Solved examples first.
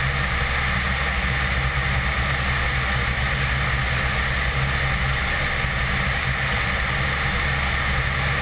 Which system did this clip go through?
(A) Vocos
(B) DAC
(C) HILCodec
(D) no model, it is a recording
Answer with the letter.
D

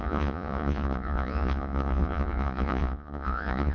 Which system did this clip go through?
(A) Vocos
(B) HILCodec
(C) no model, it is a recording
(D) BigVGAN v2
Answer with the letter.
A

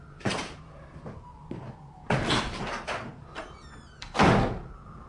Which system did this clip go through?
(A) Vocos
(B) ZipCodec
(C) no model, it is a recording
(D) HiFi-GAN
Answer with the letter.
C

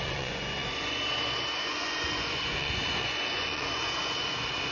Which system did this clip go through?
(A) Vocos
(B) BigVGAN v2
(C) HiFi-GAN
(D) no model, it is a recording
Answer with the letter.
A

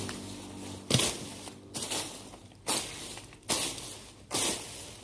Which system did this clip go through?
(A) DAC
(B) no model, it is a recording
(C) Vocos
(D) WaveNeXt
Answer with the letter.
B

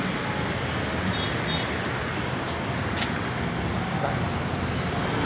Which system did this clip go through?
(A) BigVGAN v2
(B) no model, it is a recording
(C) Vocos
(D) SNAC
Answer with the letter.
B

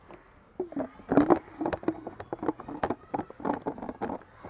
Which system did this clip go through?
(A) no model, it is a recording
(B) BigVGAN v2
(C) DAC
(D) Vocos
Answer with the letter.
A